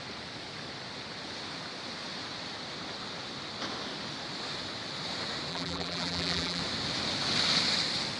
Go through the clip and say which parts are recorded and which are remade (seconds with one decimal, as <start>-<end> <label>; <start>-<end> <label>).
0.0-5.5 recorded; 5.5-6.6 remade; 6.6-8.2 recorded